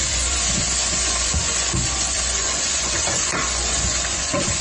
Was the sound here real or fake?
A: fake